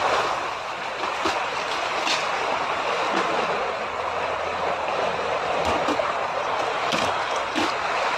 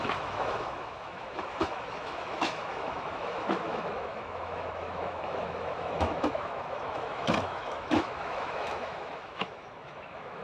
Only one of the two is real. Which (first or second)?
first